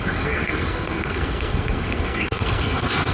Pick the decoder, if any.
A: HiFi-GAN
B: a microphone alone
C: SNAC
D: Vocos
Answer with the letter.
C